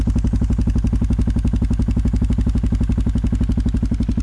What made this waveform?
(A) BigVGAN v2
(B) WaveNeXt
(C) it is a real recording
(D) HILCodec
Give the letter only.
C